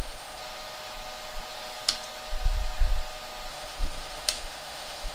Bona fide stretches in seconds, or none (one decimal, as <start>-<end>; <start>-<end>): 0.4-3.5